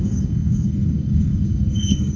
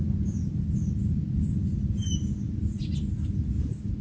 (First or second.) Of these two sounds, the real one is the second